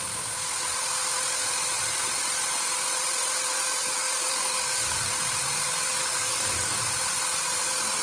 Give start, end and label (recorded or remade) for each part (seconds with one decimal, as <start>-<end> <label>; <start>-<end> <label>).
0.0-4.0 recorded; 4.0-5.1 remade; 5.1-6.0 recorded; 6.0-6.9 remade; 6.9-8.0 recorded